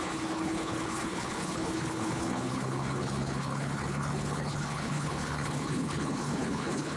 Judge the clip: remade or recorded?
remade